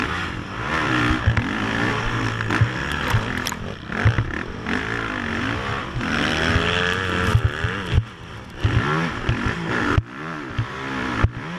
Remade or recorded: recorded